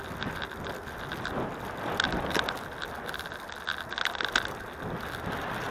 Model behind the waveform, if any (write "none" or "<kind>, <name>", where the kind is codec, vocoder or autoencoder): none